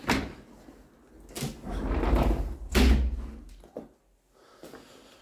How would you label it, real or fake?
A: real